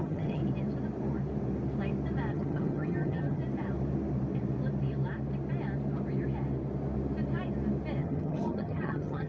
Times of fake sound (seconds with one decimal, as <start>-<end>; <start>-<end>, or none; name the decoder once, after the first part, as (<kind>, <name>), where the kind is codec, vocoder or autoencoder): 0.0-0.4 (vocoder, HiFi-GAN); 2.3-3.4; 8.0-9.3